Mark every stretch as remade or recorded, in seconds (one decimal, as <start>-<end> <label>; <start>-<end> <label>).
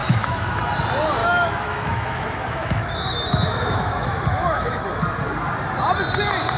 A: 0.0-0.6 remade; 0.6-1.2 recorded; 1.2-5.0 remade; 5.0-6.6 recorded